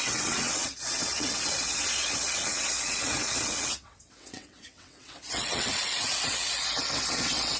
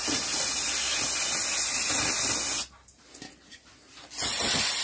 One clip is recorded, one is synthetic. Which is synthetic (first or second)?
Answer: first